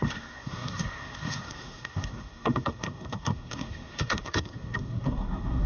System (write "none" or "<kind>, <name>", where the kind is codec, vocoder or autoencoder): codec, SNAC